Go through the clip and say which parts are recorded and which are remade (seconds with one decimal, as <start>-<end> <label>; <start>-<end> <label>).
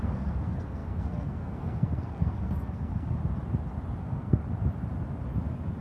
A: 0.0-3.2 remade; 3.2-4.0 recorded; 4.0-4.4 remade; 4.4-5.8 recorded